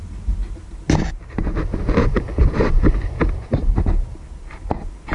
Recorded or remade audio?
recorded